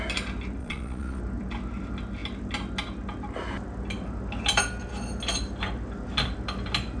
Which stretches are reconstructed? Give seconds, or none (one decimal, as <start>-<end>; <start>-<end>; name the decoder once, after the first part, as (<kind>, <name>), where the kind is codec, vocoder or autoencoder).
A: 0.6-1.2 (vocoder, Vocos)